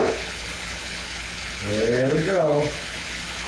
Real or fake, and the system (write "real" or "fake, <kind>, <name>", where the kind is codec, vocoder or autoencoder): fake, codec, HILCodec